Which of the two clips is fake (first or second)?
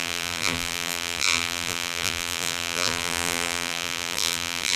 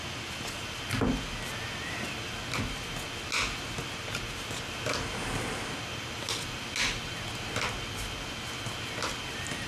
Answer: first